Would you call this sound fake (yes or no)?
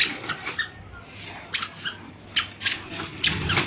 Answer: no